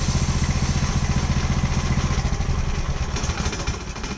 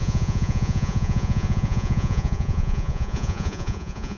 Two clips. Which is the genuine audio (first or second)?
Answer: first